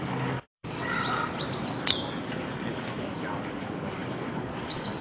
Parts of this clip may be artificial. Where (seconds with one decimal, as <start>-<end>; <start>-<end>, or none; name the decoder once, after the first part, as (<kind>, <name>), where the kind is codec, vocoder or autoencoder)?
0.0-0.8 (codec, DAC); 2.2-5.0